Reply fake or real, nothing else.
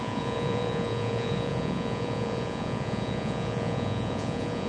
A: fake